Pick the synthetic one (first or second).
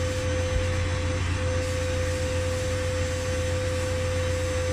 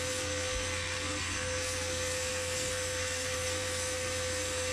second